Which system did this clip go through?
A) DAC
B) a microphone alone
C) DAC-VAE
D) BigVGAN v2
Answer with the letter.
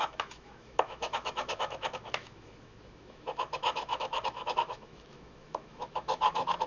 C